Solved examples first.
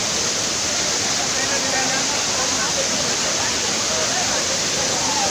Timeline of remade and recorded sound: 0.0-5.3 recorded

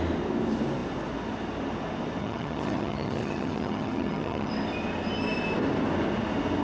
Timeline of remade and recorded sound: 0.0-2.2 recorded; 2.2-4.5 remade; 4.5-6.6 recorded